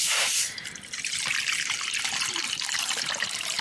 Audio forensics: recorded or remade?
remade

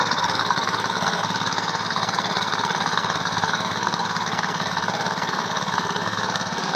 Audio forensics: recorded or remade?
remade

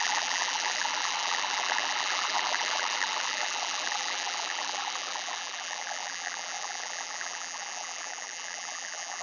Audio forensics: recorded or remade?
remade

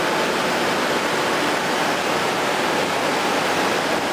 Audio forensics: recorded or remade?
recorded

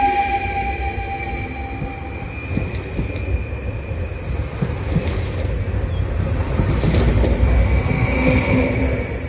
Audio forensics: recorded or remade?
recorded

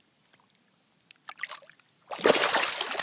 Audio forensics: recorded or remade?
recorded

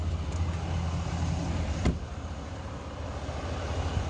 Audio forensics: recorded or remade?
recorded